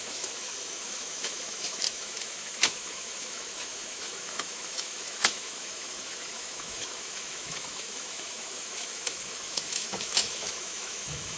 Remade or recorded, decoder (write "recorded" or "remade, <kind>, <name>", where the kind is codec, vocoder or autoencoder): remade, autoencoder, DAC-VAE